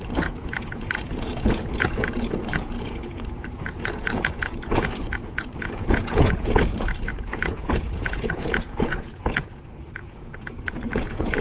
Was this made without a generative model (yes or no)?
no